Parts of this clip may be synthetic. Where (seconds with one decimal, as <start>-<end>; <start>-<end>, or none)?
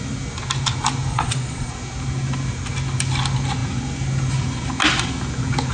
1.1-1.7